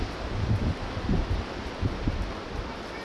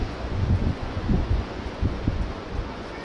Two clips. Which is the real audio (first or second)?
first